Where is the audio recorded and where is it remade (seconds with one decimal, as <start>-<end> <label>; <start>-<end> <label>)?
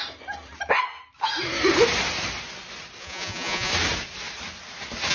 0.0-3.0 recorded; 3.0-3.7 remade; 3.7-5.1 recorded